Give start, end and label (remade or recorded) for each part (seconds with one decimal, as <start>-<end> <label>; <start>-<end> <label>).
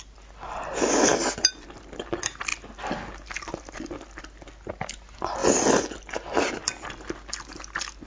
0.0-8.1 recorded